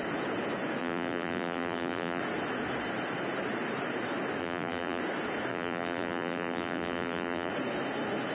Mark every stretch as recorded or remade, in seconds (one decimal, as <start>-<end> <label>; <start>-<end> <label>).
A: 0.0-0.8 recorded; 0.8-2.2 remade; 2.2-4.4 recorded; 4.4-5.0 remade; 5.0-5.5 recorded; 5.5-7.5 remade; 7.5-8.3 recorded